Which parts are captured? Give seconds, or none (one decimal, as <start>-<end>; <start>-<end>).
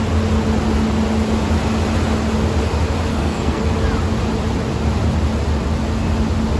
0.0-3.1; 3.6-6.6